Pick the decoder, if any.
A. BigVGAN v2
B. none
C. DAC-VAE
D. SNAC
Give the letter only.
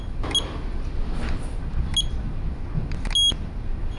B